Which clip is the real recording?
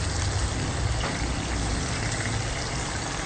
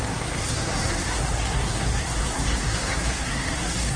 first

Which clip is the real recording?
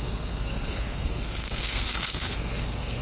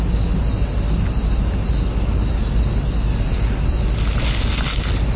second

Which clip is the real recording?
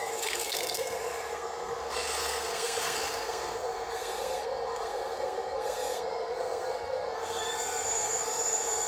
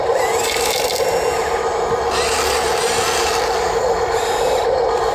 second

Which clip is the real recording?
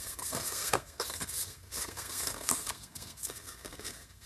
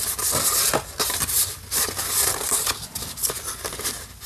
second